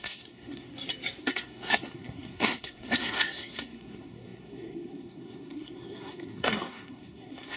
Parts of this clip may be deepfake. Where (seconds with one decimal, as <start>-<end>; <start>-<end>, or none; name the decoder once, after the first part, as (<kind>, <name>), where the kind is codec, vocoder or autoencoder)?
0.0-0.7 (codec, SNAC); 1.2-7.6